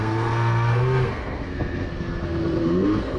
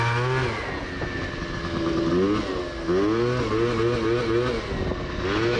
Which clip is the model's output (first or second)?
first